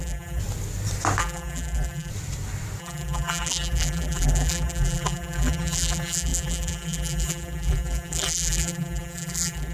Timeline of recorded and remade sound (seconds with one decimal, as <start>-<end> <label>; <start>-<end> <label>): 0.0-0.4 remade; 0.4-1.2 recorded; 1.2-2.1 remade; 2.1-2.8 recorded; 2.8-9.7 remade